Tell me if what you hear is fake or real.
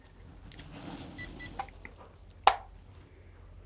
real